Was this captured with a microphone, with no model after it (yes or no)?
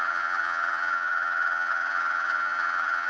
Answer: no